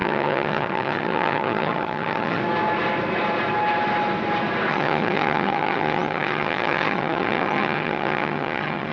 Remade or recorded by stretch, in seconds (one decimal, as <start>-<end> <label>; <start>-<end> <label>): 0.0-2.4 remade; 2.4-4.7 recorded; 4.7-8.9 remade